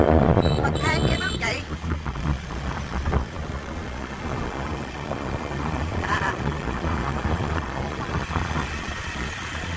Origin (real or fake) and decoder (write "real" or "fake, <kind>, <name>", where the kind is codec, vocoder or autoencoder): fake, vocoder, Vocos